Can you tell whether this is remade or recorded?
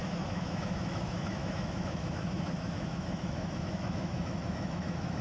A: remade